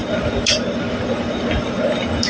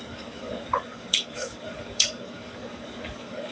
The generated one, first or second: second